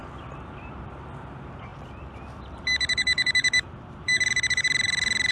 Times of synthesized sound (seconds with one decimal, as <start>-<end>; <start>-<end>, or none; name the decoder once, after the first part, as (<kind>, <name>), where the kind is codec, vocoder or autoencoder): 0.8-5.3 (vocoder, BigVGAN v2)